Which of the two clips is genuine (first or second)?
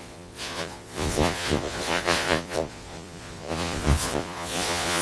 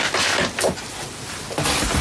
second